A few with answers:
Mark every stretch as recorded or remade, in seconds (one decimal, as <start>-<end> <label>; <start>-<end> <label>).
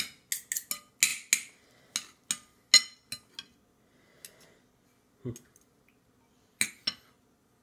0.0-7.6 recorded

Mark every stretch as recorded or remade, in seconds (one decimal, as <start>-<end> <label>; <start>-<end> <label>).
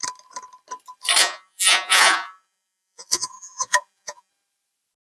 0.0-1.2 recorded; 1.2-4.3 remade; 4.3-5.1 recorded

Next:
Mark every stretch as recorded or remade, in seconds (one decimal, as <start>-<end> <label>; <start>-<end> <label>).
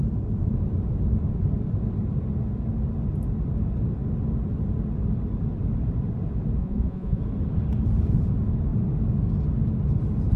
0.0-6.6 recorded; 6.6-7.2 remade; 7.2-10.4 recorded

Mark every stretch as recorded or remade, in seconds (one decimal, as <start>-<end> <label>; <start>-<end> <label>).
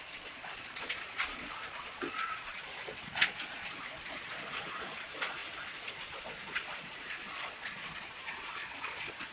0.0-9.3 remade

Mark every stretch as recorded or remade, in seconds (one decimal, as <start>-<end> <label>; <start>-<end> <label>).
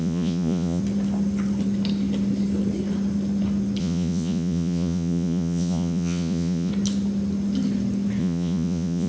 0.0-0.8 remade; 0.8-3.8 recorded; 3.8-6.7 remade; 6.7-8.2 recorded; 8.2-9.1 remade